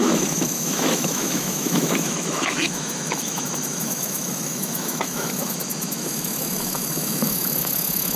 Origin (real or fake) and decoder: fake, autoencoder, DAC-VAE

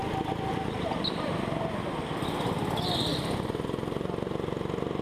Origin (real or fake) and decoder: real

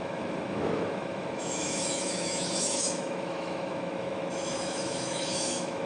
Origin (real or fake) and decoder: fake, autoencoder, DAC-VAE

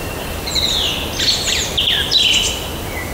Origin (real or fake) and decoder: real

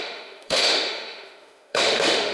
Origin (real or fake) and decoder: fake, autoencoder, DAC-VAE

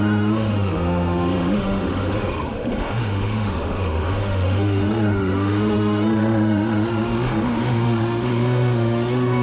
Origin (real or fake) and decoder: fake, autoencoder, DAC-VAE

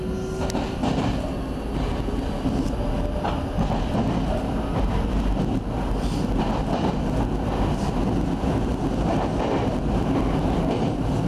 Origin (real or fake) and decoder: real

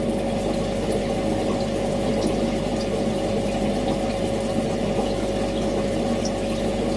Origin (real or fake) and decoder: real